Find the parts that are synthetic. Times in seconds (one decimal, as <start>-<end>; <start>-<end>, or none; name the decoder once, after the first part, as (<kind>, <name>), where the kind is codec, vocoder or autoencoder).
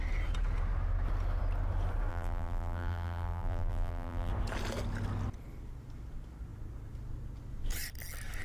2.1-4.3 (vocoder, BigVGAN v2)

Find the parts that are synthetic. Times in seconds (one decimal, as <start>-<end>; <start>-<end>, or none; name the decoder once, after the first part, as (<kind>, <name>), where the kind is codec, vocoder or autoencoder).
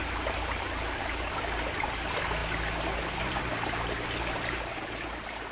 none